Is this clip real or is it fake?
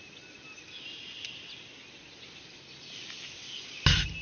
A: real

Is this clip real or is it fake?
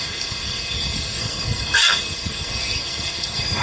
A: fake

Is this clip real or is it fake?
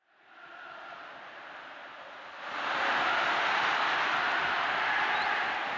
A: real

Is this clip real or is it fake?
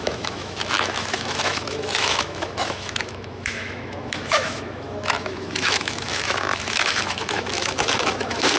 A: fake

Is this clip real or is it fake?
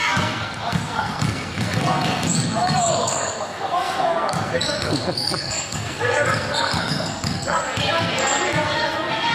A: fake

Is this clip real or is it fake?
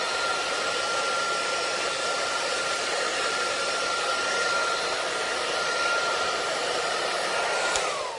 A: fake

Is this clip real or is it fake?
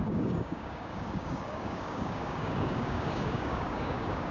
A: fake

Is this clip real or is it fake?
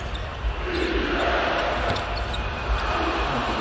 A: real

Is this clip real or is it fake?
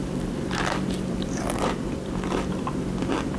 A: fake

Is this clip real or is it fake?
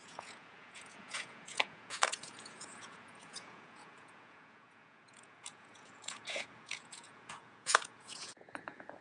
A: fake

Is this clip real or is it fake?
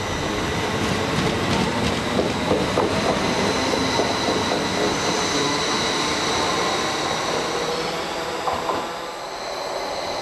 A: real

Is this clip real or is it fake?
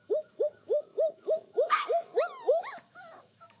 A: fake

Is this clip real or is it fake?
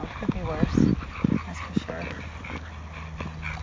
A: real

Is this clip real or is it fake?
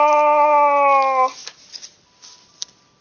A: real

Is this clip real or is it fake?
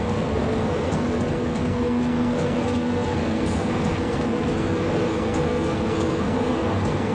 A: fake